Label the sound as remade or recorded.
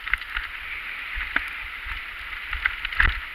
recorded